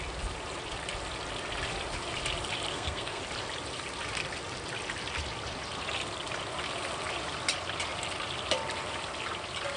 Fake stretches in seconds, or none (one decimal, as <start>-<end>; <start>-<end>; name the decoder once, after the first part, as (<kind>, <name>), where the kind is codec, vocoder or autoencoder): 2.7-3.2 (codec, SNAC)